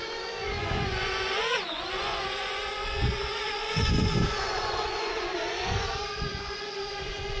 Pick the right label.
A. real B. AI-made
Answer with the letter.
B